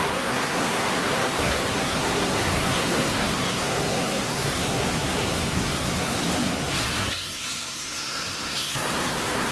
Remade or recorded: remade